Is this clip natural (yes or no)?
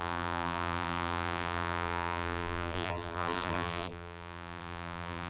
no